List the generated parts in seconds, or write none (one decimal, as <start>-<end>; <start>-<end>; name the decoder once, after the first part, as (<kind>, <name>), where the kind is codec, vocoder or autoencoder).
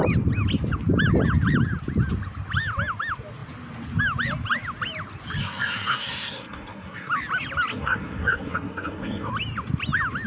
5.4-7.1 (codec, SNAC); 7.7-9.3